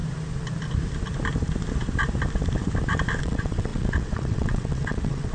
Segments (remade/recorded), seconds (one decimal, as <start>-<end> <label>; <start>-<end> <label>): 0.0-3.2 recorded; 3.2-5.3 remade